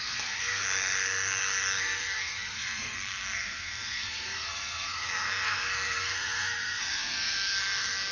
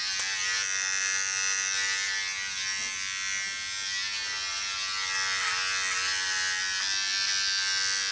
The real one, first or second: second